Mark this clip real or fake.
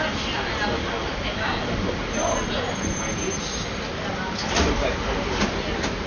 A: real